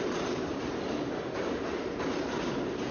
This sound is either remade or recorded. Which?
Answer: recorded